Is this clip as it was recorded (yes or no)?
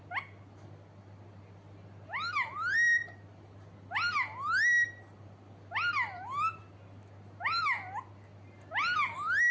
yes